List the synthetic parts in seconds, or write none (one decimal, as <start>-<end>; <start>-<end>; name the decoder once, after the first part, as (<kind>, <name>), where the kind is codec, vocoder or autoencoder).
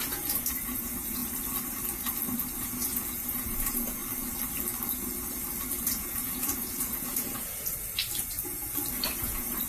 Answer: 0.0-1.2 (vocoder, Vocos); 2.6-4.0; 5.8-7.7; 9.2-9.7